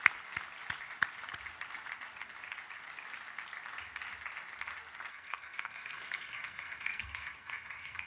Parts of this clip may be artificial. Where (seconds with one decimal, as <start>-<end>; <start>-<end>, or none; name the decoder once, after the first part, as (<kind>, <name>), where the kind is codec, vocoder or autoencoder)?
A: 5.1-8.1 (codec, SNAC)